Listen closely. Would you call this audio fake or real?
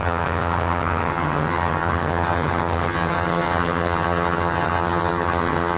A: fake